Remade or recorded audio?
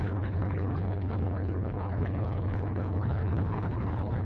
remade